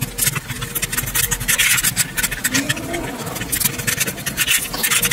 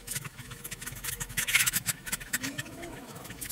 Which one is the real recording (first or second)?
first